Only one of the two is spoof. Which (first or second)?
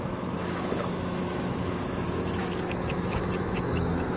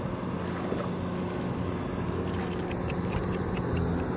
first